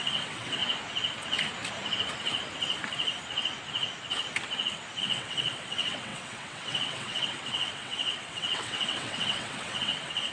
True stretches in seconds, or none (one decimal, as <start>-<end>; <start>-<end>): 0.6-5.0